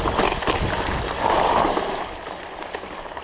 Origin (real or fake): real